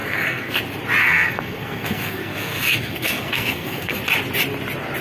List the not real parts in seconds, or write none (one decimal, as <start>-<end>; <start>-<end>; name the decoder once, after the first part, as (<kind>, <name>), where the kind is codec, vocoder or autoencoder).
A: 0.0-0.6 (codec, SNAC); 1.0-4.0